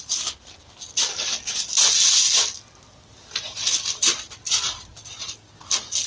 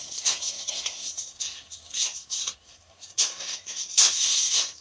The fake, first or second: second